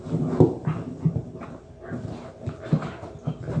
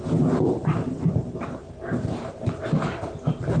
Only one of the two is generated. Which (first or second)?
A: second